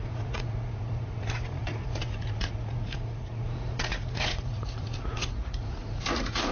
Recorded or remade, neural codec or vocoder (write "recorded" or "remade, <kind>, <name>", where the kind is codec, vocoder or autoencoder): remade, vocoder, Vocos